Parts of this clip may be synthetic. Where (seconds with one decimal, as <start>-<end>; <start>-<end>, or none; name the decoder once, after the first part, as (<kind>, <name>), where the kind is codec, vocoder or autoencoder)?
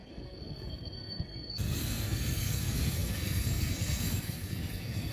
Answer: 0.0-5.1 (codec, SNAC)